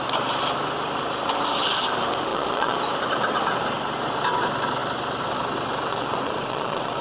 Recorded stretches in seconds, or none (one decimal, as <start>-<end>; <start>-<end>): 0.0-2.3; 2.8-5.9